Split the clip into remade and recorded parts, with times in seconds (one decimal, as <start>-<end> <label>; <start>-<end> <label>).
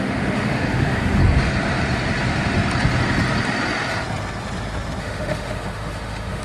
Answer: 0.0-1.2 remade; 1.2-5.0 recorded; 5.0-6.4 remade